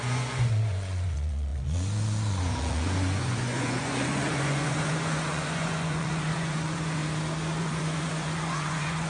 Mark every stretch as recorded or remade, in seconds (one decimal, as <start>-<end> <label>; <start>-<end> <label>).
0.0-7.0 remade; 7.0-7.6 recorded; 7.6-9.1 remade